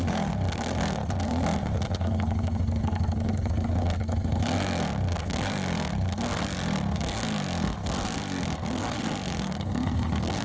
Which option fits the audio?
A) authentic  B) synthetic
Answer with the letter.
B